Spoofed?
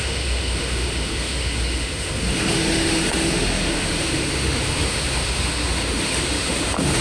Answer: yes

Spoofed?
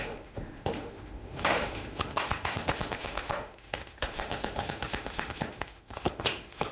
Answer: yes